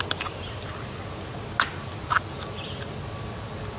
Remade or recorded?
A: recorded